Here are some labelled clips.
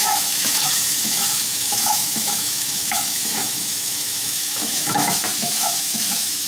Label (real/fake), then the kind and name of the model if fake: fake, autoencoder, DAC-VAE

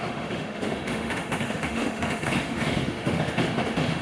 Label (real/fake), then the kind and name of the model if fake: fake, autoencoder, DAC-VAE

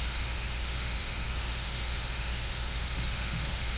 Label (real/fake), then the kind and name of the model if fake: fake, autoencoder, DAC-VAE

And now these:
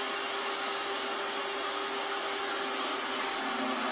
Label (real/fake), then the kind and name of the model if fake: real